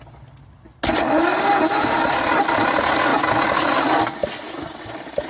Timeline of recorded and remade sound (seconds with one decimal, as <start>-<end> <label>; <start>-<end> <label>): 0.0-5.3 recorded